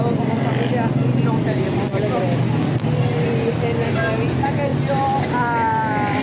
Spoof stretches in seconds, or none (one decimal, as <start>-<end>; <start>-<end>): none